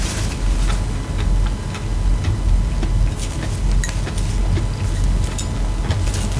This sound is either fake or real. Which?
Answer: real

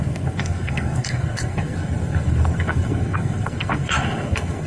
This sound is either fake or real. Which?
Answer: fake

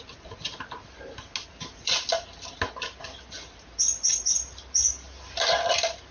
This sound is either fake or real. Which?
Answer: real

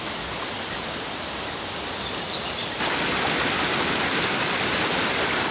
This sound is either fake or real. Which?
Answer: real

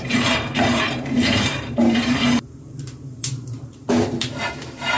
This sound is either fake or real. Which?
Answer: fake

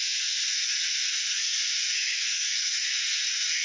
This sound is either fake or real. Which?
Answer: fake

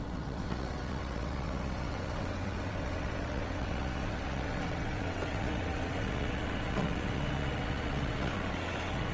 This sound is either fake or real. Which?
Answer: fake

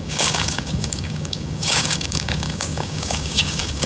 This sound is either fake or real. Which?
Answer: fake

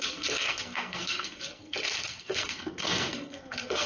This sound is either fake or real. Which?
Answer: fake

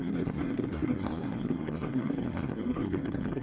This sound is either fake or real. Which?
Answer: fake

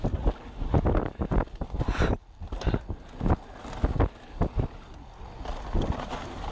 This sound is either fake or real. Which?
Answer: real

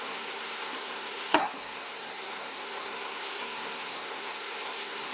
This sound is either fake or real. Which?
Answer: fake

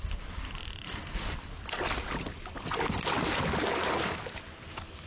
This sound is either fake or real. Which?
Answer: real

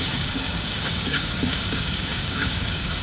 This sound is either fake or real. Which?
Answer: fake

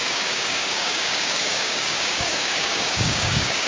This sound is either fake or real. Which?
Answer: fake